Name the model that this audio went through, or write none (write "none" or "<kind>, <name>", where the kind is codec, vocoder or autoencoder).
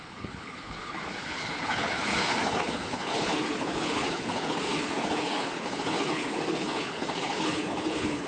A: codec, HILCodec